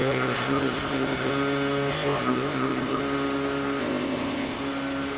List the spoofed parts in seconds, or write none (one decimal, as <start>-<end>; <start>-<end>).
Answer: 0.0-1.3; 1.9-3.0; 3.8-4.6